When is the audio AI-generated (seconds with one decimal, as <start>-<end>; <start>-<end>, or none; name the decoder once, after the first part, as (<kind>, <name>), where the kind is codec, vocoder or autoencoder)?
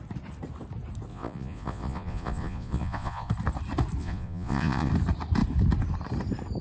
1.1-3.3 (vocoder, Vocos); 4.0-4.9